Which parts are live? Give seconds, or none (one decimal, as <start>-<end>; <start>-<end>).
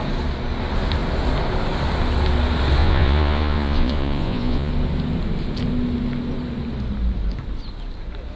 0.0-2.8; 4.7-8.4